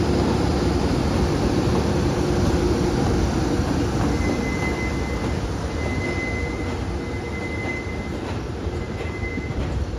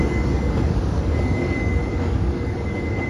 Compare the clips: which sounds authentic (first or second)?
first